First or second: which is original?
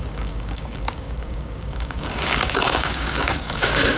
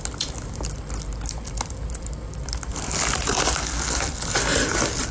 second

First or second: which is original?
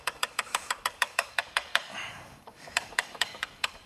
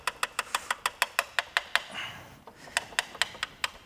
second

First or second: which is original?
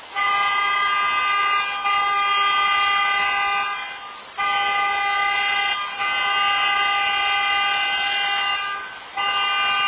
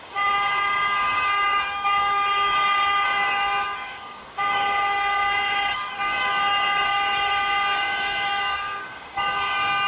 first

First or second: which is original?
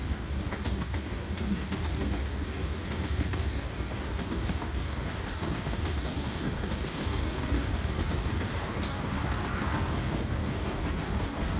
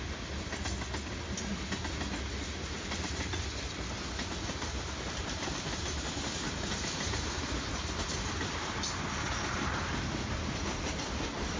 second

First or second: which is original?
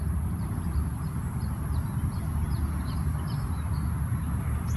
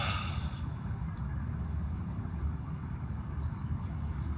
first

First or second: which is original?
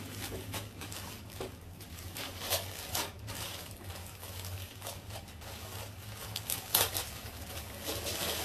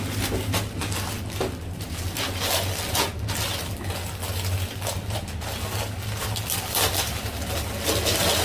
second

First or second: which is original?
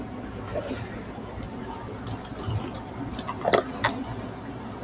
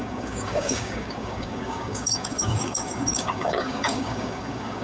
first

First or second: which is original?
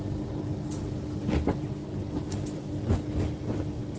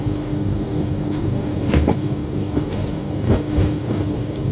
first